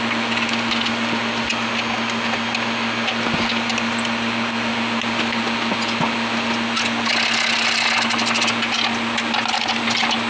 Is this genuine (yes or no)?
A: yes